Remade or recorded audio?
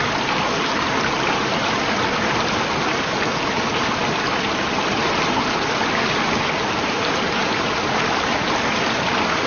recorded